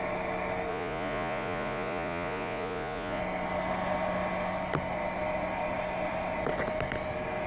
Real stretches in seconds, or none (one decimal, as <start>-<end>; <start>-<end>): 0.0-0.7; 3.2-7.5